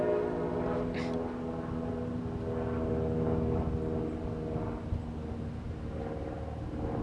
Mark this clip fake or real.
real